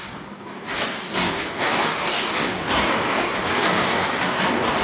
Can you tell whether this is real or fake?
fake